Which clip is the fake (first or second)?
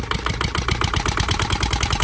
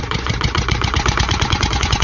second